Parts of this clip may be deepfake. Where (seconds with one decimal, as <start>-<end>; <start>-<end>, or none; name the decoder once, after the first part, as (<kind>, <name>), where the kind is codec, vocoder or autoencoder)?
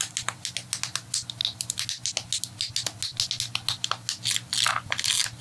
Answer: none